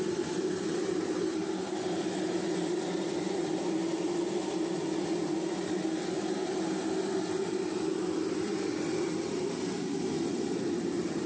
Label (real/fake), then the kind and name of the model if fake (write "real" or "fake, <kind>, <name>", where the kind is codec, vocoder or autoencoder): fake, vocoder, BigVGAN v2